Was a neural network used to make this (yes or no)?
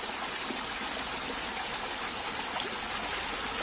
no